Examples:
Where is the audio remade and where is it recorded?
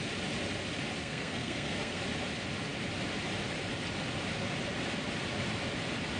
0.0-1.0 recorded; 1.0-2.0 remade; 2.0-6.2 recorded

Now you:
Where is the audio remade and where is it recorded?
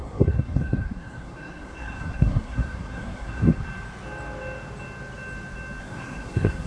0.0-3.6 remade; 3.6-5.8 recorded; 5.8-6.7 remade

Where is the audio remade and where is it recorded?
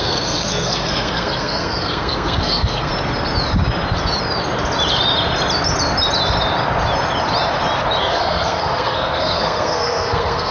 0.0-2.9 remade; 2.9-8.0 recorded; 8.0-10.5 remade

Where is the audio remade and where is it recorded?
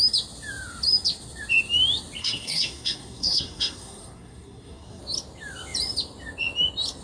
0.0-2.2 recorded; 2.2-5.0 remade; 5.0-7.0 recorded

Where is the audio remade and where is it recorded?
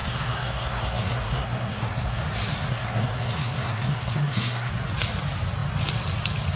0.0-2.2 remade; 2.2-2.7 recorded; 2.7-4.7 remade; 4.7-6.6 recorded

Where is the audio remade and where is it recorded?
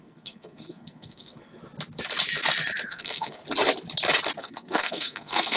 0.0-1.6 remade; 1.6-2.8 recorded; 2.8-3.4 remade; 3.4-4.4 recorded; 4.4-5.6 remade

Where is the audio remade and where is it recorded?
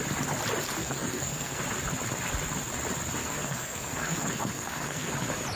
0.0-0.8 recorded; 0.8-1.6 remade; 1.6-3.2 recorded; 3.2-5.1 remade; 5.1-5.6 recorded